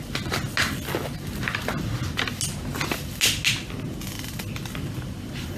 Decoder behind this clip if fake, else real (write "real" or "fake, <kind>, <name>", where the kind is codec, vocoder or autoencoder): real